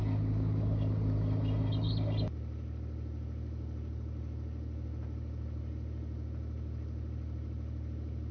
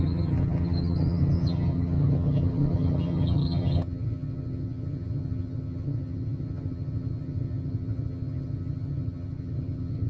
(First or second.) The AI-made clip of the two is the second